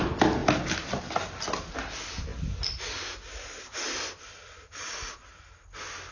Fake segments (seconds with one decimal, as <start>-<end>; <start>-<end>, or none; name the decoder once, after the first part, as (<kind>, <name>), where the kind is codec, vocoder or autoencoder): none